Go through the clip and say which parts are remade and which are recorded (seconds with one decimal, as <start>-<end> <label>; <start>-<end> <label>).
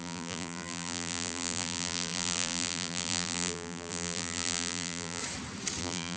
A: 0.0-5.2 remade; 5.2-5.8 recorded; 5.8-6.2 remade